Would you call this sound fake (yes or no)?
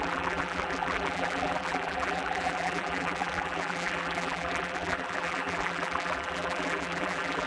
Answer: yes